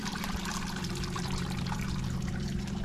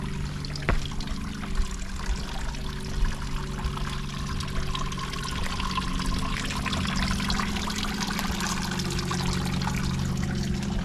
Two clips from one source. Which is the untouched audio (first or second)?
second